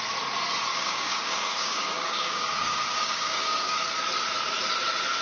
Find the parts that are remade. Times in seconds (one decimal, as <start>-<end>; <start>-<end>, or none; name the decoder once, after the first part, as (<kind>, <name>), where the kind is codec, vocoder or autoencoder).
0.7-3.8 (codec, DAC)